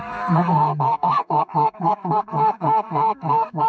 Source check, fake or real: fake